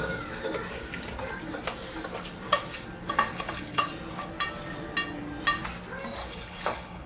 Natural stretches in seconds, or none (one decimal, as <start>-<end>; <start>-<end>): 0.0-3.3; 3.9-6.2